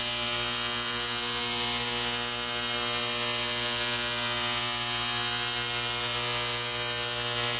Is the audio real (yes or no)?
yes